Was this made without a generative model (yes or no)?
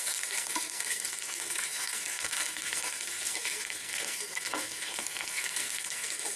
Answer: no